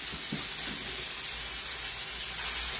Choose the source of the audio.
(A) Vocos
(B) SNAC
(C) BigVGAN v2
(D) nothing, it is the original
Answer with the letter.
D